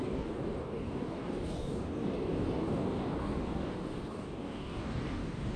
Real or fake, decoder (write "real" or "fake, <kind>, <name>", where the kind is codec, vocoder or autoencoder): fake, codec, DAC